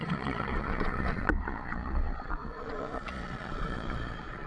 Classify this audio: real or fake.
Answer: fake